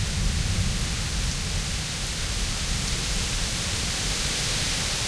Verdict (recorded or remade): remade